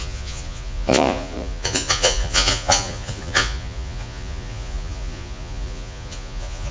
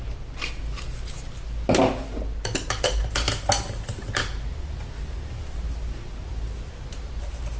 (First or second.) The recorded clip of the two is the second